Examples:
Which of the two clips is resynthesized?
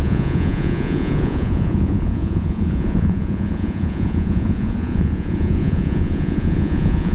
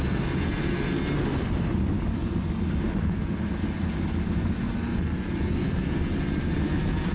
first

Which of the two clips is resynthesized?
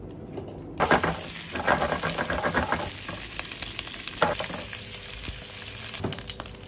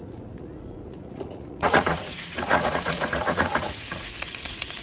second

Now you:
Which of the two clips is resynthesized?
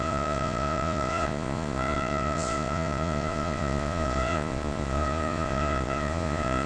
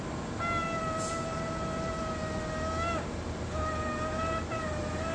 first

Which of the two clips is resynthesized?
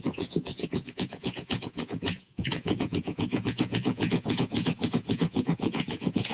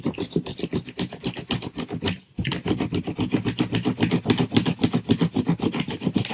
first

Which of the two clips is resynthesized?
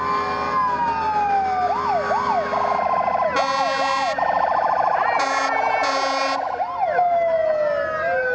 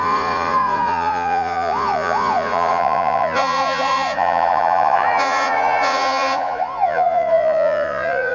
second